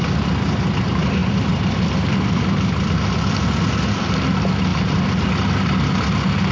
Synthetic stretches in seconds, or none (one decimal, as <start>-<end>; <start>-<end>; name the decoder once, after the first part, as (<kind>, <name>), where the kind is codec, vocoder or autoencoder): 1.2-2.9 (vocoder, BigVGAN v2); 4.7-5.7